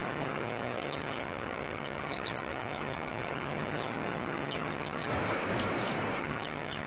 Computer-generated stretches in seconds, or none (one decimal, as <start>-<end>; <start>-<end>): 0.0-5.1; 6.2-6.9